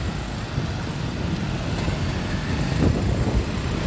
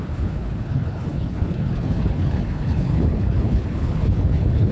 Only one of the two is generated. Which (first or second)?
second